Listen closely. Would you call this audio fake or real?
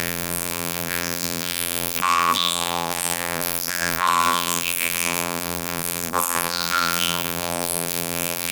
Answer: fake